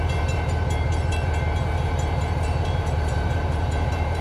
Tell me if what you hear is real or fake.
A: fake